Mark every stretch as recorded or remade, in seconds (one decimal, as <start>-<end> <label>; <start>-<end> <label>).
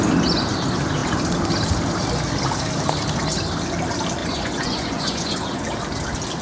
0.0-4.2 recorded; 4.2-5.6 remade; 5.6-6.4 recorded